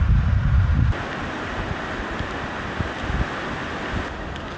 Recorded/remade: recorded